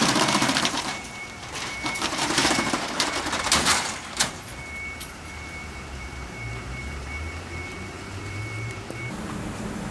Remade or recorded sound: remade